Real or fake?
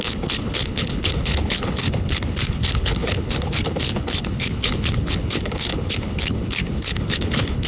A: fake